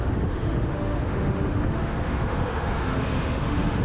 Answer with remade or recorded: remade